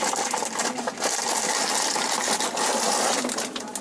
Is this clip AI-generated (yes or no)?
no